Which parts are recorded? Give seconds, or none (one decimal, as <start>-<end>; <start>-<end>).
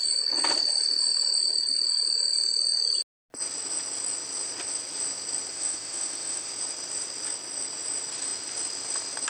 0.0-5.5; 6.5-9.3